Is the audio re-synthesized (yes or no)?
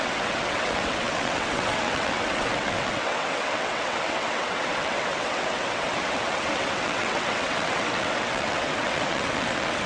yes